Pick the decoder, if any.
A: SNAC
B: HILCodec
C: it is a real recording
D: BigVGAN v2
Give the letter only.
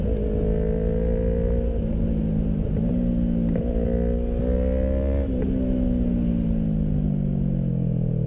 C